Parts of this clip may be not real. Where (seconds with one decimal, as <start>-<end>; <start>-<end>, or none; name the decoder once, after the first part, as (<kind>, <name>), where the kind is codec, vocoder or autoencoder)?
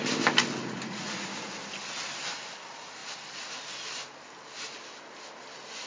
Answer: 0.6-1.4 (vocoder, Vocos)